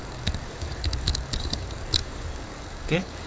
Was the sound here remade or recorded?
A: remade